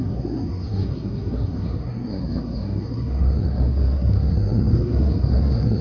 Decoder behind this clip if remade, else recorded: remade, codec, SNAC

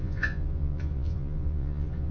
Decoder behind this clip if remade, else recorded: remade, vocoder, Vocos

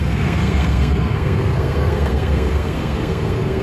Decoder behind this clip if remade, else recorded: remade, codec, SNAC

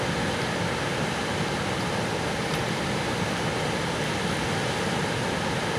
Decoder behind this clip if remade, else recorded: remade, vocoder, BigVGAN v2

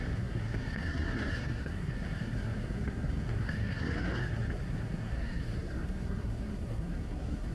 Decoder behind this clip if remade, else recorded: remade, codec, SNAC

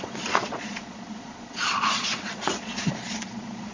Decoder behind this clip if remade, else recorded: remade, vocoder, Vocos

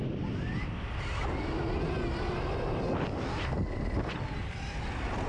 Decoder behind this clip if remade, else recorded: recorded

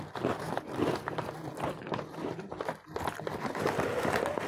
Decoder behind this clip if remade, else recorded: recorded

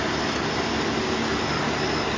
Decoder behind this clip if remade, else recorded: recorded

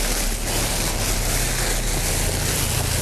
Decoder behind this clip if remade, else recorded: recorded